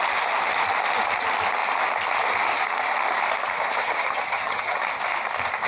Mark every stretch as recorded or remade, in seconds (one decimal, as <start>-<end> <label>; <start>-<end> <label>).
0.0-3.8 recorded; 3.8-4.8 remade; 4.8-5.7 recorded

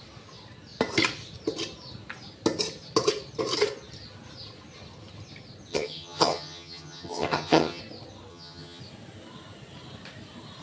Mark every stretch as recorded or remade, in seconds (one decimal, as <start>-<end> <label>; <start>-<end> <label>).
0.0-5.7 recorded; 5.7-7.8 remade; 7.8-8.3 recorded; 8.3-8.8 remade; 8.8-10.6 recorded

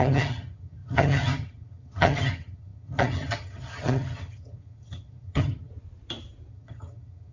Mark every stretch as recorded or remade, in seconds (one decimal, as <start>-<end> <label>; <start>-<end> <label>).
0.0-5.7 remade; 5.7-6.5 recorded; 6.5-7.3 remade